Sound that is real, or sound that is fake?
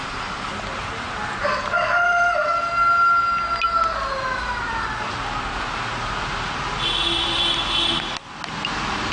real